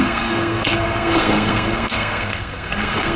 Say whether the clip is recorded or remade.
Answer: remade